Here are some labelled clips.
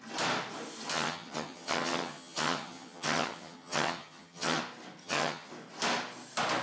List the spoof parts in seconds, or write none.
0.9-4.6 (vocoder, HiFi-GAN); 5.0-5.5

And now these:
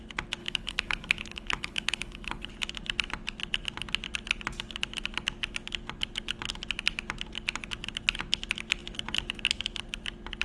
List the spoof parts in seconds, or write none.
0.4-2.5 (codec, HILCodec)